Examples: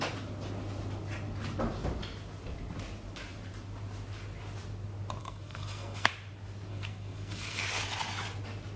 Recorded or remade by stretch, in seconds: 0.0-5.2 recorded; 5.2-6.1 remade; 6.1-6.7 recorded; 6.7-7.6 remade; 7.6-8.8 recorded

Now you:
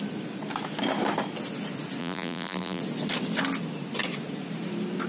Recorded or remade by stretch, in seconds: 0.0-2.0 recorded; 2.0-2.8 remade; 2.8-5.1 recorded

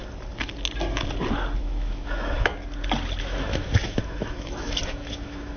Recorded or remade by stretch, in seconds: 0.0-1.6 recorded; 1.6-2.5 remade; 2.5-3.2 recorded; 3.2-5.6 remade